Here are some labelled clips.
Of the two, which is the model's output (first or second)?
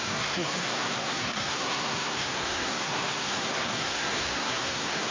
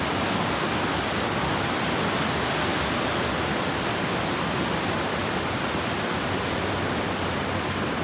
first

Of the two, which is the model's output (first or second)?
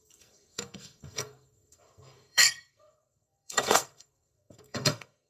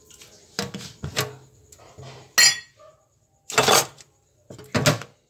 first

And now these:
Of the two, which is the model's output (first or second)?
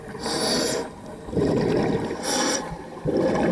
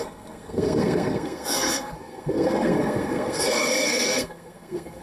second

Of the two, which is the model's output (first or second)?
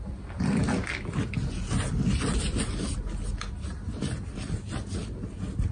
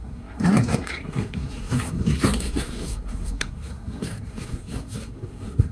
second